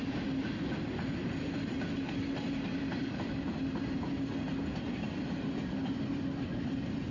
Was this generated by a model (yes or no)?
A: no